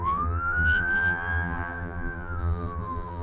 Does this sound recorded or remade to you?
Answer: remade